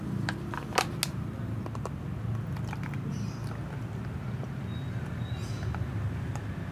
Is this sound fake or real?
real